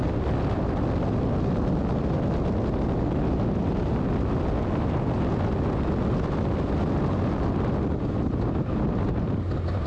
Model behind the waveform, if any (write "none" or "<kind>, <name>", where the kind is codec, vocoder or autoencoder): none